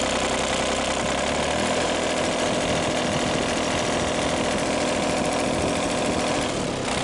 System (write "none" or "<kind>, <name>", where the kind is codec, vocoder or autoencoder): none